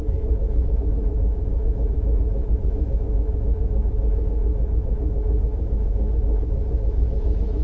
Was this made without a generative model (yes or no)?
no